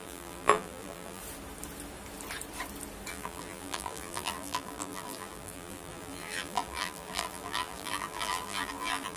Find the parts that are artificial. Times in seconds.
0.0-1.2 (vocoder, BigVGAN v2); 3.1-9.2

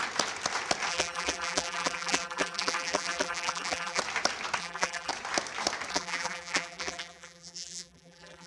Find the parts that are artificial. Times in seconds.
0.9-4.0 (vocoder, BigVGAN v2); 4.6-5.1; 5.9-8.5

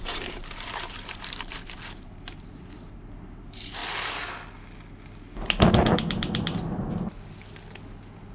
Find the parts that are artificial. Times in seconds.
0.0-3.8 (vocoder, BigVGAN v2)

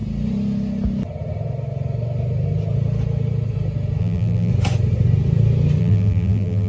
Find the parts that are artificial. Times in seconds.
4.0-4.5 (vocoder, BigVGAN v2); 5.8-6.7